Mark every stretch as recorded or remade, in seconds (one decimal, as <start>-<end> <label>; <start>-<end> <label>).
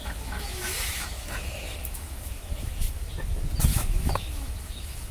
0.0-3.1 remade; 3.1-3.7 recorded; 3.7-5.1 remade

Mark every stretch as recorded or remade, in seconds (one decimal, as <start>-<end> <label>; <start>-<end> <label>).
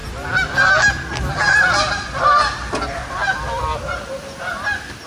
0.0-5.1 recorded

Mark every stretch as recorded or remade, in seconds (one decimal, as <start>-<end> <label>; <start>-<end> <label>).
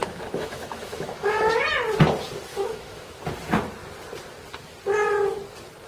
0.0-1.6 remade; 1.6-2.5 recorded; 2.5-3.2 remade; 3.2-5.9 recorded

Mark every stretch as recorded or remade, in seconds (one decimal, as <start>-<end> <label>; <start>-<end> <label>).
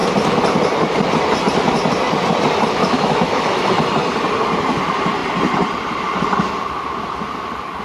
0.0-2.8 recorded; 2.8-3.7 remade; 3.7-7.8 recorded